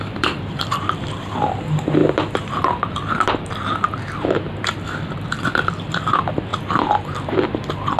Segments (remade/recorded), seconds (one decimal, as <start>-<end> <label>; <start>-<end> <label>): 0.0-8.0 remade